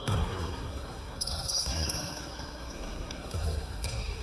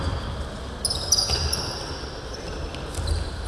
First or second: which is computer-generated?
first